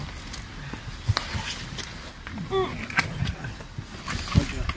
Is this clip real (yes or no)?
yes